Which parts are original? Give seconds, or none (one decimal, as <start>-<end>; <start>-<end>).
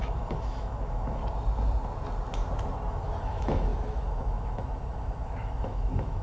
1.2-2.9